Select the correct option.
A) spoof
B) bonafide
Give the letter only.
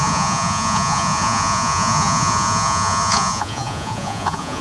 A